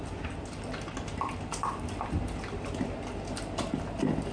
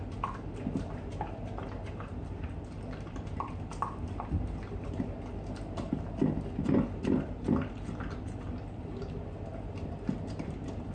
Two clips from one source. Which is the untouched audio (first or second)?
first